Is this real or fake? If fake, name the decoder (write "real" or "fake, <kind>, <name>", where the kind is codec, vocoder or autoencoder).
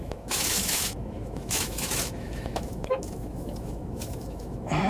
fake, autoencoder, DAC-VAE